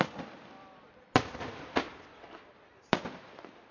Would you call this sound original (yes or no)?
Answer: yes